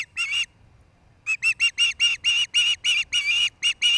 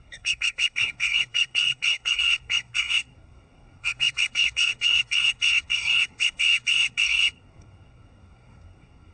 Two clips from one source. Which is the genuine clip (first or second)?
first